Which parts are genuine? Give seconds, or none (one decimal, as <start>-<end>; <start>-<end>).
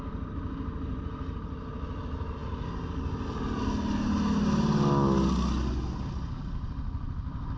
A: 0.0-7.6